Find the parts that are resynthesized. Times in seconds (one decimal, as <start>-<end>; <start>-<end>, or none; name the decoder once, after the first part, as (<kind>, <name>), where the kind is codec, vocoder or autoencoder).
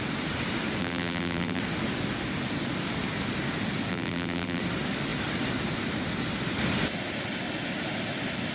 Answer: 0.8-1.6 (vocoder, BigVGAN v2); 3.9-4.6